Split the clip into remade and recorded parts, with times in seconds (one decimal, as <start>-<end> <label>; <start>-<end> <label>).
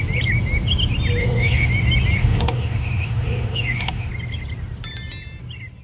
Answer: 0.0-1.2 recorded; 1.2-1.7 remade; 1.7-2.2 recorded; 2.2-4.1 remade; 4.1-5.8 recorded